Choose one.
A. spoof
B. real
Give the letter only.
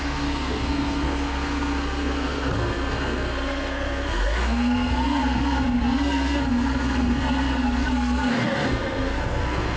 A